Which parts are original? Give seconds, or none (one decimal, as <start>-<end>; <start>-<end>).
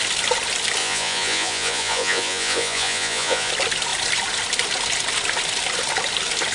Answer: 0.0-0.8; 3.5-6.5